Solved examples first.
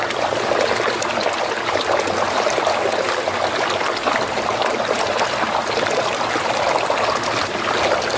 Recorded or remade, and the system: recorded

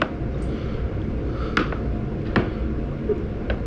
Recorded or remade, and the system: recorded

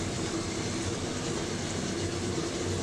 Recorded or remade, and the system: recorded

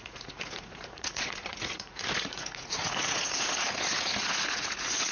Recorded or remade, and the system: remade, vocoder, Vocos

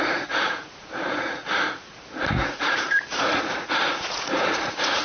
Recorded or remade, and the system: remade, vocoder, Vocos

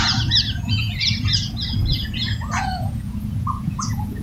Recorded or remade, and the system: remade, vocoder, Vocos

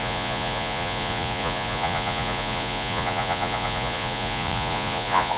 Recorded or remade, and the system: remade, vocoder, Vocos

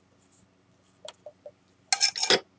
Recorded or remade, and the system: recorded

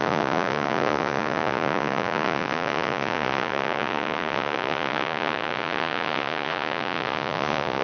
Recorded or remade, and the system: remade, vocoder, Vocos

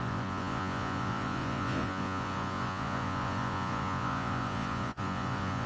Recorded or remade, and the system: remade, vocoder, Vocos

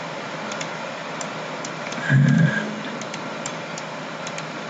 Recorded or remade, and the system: recorded